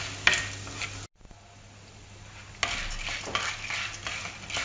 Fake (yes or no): no